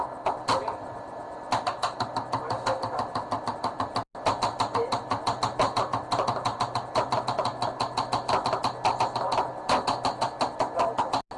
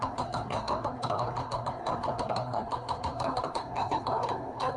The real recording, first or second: first